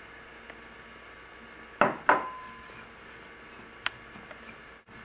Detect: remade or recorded recorded